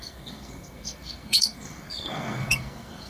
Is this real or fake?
fake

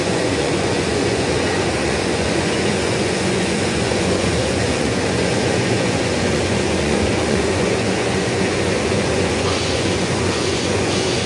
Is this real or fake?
fake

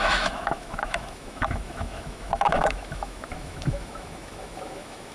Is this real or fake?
fake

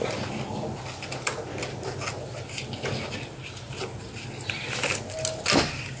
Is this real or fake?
real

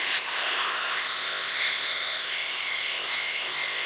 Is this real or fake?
fake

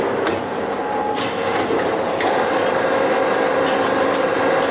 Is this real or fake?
real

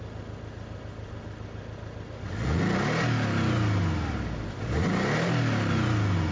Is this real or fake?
real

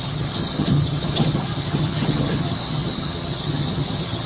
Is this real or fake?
fake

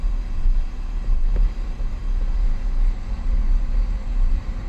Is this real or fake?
fake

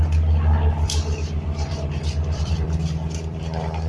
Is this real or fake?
fake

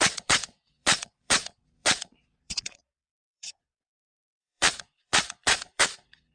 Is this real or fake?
fake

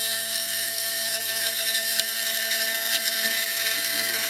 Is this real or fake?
fake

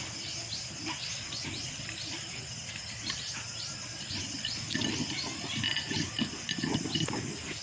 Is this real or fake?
real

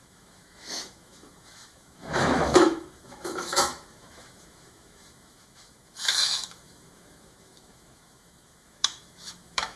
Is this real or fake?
fake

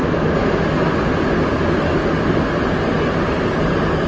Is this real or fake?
real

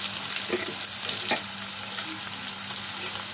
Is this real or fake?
real